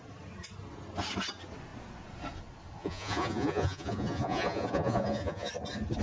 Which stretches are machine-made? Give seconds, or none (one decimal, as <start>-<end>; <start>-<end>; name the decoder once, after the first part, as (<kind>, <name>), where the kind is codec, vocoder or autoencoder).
2.8-5.5 (vocoder, Vocos)